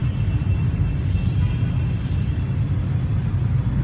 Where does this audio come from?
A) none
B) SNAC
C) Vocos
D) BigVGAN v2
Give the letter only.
A